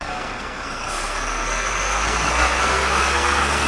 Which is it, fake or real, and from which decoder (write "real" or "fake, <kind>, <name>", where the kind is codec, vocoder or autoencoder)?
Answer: fake, codec, SNAC